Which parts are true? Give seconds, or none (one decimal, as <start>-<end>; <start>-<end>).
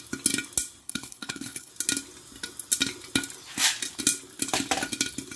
0.0-0.8; 1.7-5.4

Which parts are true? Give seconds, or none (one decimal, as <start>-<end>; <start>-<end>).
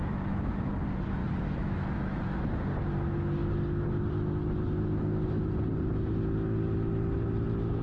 0.7-1.2; 2.4-7.8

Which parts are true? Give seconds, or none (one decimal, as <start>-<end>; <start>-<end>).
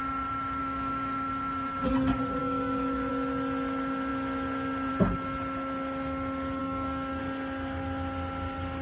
0.0-0.6; 1.3-2.4; 3.1-6.6; 7.2-8.8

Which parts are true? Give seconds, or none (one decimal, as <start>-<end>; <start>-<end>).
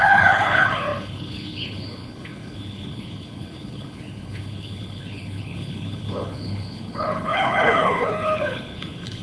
none